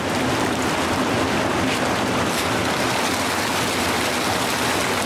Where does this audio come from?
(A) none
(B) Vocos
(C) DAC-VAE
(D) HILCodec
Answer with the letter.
A